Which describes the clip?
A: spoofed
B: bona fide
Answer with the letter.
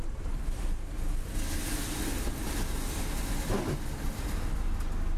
B